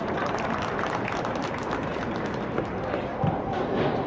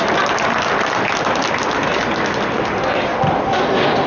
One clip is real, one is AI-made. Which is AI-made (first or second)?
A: first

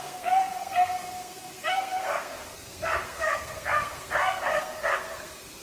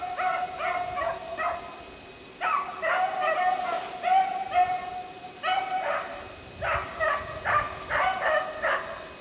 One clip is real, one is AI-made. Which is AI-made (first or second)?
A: first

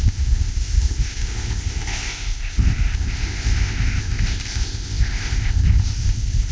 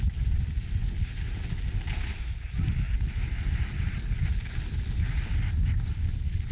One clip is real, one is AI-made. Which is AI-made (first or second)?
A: first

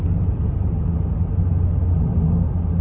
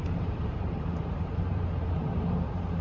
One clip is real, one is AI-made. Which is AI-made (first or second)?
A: second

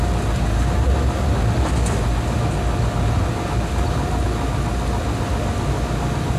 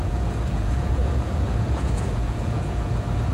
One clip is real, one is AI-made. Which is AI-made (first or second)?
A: second